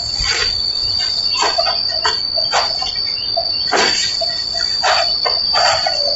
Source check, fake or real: real